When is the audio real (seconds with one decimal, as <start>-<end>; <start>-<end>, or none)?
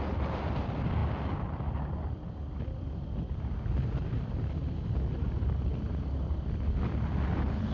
0.0-7.7